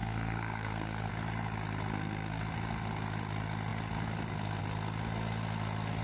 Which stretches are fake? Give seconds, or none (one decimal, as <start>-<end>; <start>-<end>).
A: 0.0-1.1; 1.9-2.4